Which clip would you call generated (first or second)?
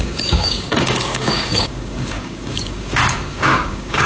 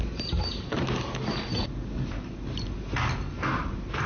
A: first